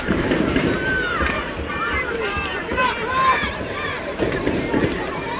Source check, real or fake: fake